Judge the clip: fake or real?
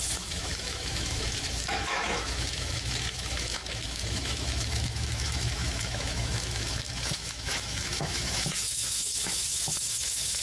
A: fake